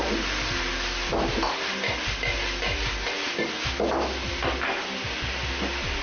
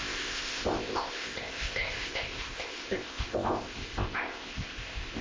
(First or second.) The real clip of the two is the first